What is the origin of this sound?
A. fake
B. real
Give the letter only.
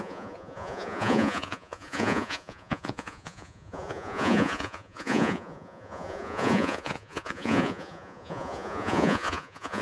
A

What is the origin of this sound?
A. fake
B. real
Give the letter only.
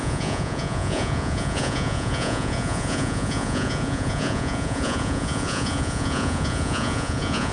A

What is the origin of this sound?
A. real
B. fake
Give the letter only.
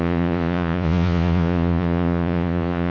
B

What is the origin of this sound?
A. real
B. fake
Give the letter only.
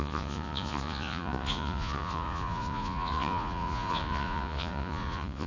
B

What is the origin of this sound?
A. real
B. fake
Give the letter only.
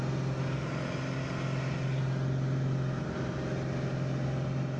A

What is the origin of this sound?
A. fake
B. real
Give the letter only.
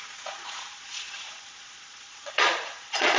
A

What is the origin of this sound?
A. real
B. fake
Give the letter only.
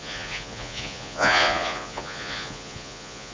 B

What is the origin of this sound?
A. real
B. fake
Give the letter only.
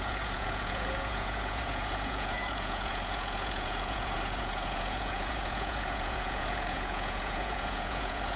B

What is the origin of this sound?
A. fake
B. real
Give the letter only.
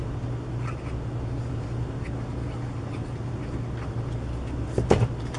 B